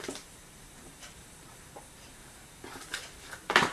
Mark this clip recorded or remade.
remade